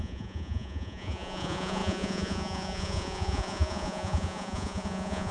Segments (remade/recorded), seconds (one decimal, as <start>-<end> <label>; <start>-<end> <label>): 0.0-5.3 remade